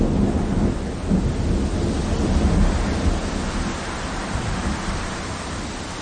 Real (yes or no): yes